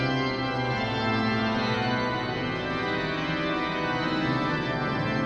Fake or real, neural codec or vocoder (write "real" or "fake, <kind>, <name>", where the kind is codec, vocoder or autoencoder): real